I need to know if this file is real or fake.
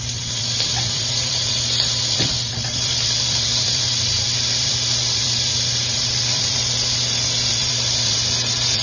fake